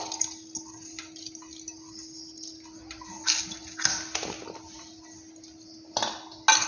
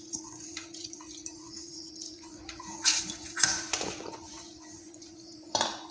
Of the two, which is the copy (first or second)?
second